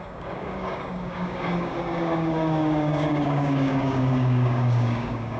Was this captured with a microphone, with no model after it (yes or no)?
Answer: no